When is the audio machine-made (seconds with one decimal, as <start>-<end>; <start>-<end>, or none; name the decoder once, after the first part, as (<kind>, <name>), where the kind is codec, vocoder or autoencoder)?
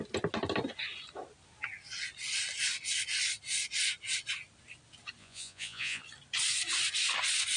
5.2-6.0 (vocoder, Vocos)